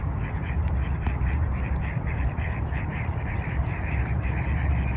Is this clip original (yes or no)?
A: no